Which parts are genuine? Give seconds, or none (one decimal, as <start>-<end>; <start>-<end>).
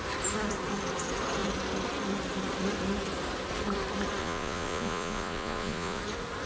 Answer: 0.0-4.2; 6.0-6.5